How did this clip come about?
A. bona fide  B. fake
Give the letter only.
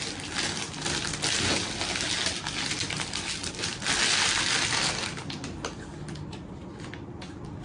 A